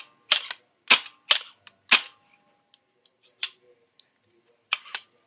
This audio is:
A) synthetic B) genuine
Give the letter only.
B